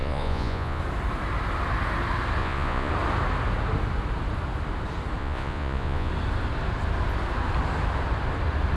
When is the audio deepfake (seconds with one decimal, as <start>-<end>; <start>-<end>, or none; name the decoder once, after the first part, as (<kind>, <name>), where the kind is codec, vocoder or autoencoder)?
0.0-0.8 (vocoder, Vocos); 2.4-2.9; 5.2-6.1